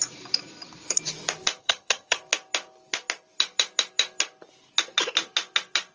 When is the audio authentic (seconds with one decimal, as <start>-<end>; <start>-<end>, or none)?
0.0-1.6; 2.2-5.9